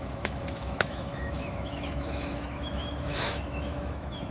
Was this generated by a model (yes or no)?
yes